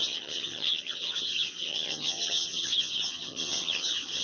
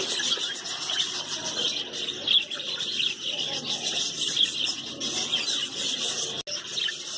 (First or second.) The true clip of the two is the second